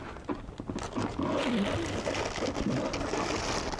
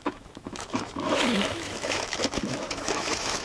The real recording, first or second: first